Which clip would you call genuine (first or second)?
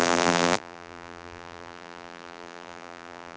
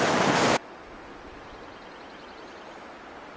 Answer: second